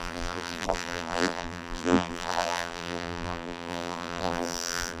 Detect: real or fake fake